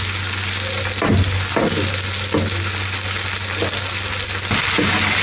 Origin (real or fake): real